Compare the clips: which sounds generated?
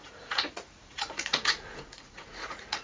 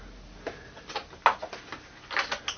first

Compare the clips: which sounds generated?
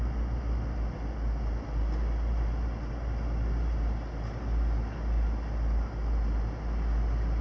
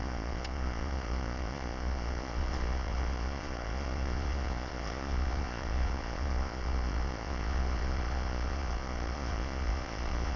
second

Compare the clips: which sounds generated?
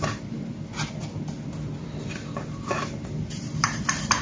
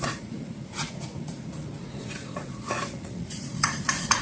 second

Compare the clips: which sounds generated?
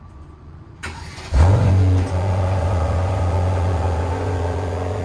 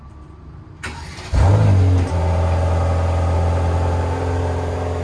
first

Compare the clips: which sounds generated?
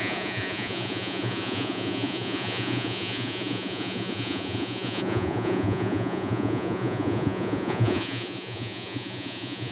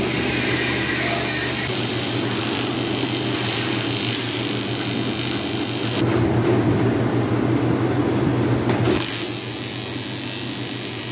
first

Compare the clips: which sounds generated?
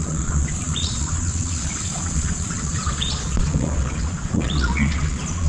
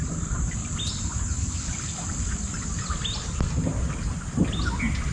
first